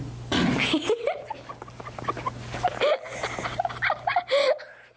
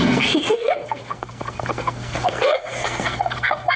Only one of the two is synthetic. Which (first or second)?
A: second